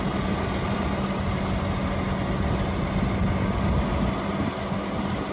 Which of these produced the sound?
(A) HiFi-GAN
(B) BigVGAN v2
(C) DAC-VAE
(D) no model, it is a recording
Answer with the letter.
D